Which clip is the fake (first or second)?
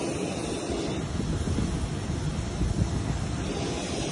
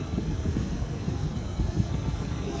second